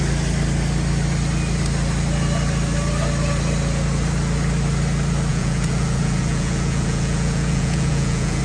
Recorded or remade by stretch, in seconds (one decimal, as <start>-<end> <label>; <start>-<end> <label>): 0.0-5.3 recorded; 5.3-8.4 remade